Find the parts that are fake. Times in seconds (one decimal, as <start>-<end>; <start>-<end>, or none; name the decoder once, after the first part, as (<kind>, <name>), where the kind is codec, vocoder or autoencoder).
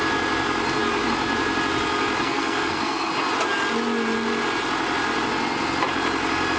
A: 2.2-3.1 (codec, SNAC)